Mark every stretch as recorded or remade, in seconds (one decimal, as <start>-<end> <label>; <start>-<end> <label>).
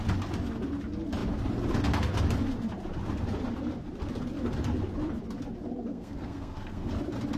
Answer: 0.0-5.9 recorded; 5.9-6.9 remade; 6.9-7.4 recorded